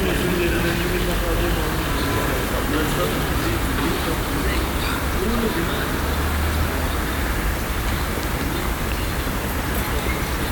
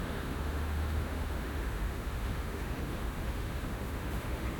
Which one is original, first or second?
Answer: first